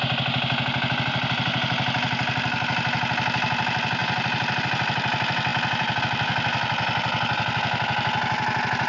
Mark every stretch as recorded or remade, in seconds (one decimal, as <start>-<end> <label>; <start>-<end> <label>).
0.0-5.5 recorded; 5.5-6.0 remade; 6.0-8.9 recorded